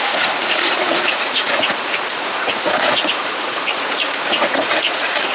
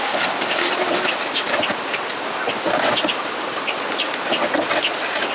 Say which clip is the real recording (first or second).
second